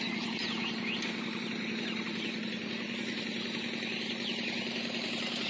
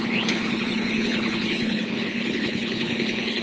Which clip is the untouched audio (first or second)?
first